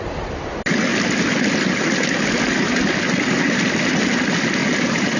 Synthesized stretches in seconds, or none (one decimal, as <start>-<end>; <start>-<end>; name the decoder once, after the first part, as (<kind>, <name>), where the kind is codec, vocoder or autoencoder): none